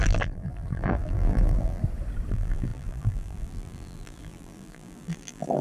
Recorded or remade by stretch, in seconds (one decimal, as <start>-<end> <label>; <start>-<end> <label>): 0.0-1.8 remade; 1.8-2.3 recorded; 2.3-5.6 remade